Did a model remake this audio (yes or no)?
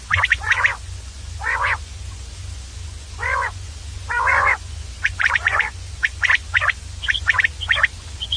yes